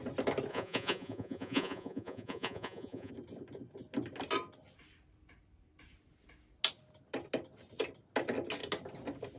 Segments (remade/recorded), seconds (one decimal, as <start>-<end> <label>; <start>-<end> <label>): 0.0-0.5 recorded; 0.5-3.1 remade; 3.1-9.4 recorded